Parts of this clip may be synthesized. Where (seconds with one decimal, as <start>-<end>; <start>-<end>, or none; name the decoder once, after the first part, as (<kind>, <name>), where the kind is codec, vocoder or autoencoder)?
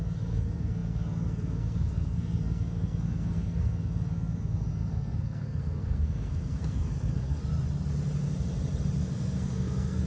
0.0-7.4 (codec, SNAC); 9.0-10.1